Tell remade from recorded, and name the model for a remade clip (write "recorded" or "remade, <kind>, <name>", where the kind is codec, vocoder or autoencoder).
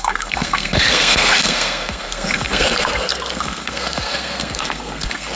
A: remade, codec, SNAC